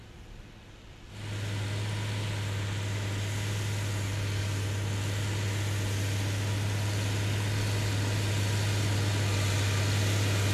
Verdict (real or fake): real